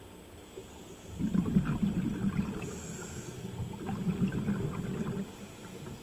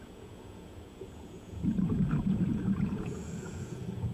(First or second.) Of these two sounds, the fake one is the second